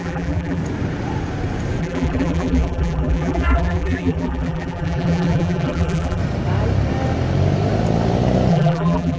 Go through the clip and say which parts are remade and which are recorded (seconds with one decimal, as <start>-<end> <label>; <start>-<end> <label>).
0.0-0.6 remade; 0.6-1.8 recorded; 1.8-6.2 remade; 6.2-8.5 recorded; 8.5-9.2 remade